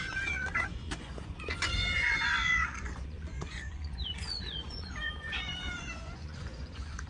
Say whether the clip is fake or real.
fake